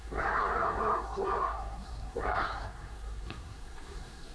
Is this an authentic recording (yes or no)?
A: no